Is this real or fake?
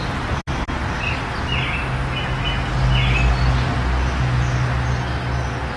real